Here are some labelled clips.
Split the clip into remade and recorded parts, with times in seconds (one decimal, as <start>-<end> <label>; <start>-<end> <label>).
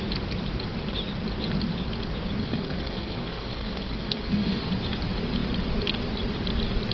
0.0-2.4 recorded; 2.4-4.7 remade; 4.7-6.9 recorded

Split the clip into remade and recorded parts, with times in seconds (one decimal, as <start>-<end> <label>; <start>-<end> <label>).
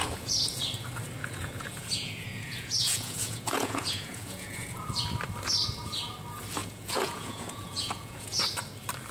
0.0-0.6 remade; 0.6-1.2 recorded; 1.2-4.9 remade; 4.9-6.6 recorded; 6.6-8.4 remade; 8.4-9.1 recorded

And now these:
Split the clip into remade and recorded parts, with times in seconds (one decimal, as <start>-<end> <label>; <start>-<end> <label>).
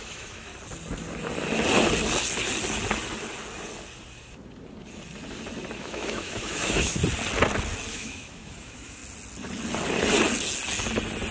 0.0-0.5 remade; 0.5-5.8 recorded; 5.8-7.0 remade; 7.0-7.9 recorded; 7.9-9.0 remade; 9.0-11.3 recorded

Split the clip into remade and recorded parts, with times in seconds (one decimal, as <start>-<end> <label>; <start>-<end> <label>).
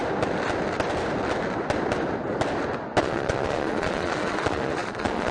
0.0-3.0 recorded; 3.0-5.3 remade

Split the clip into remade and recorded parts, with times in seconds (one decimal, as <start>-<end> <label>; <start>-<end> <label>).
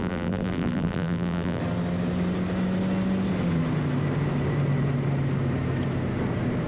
0.0-1.6 remade; 1.6-6.7 recorded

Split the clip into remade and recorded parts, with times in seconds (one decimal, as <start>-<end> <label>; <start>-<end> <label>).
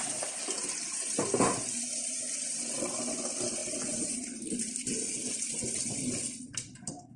0.0-3.0 remade; 3.0-3.6 recorded; 3.6-4.4 remade; 4.4-7.2 recorded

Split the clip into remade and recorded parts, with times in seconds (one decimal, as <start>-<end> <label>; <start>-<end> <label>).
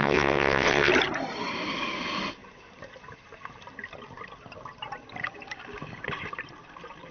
0.0-0.9 remade; 0.9-7.1 recorded